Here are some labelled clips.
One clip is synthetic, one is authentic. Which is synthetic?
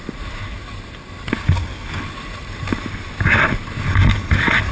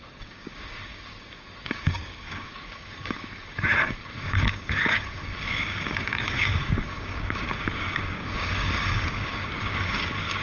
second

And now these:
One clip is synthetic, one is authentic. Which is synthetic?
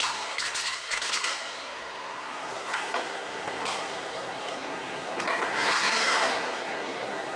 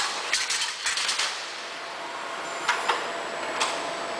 first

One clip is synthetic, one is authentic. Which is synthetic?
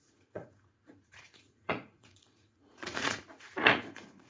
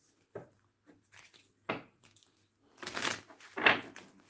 first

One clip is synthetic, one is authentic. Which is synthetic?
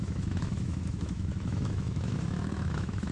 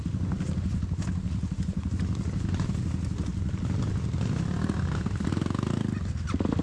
first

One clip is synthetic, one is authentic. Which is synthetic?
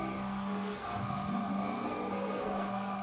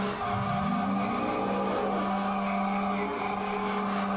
first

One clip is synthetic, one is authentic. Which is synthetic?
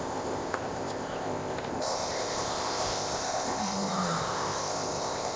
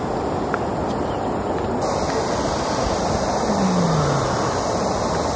first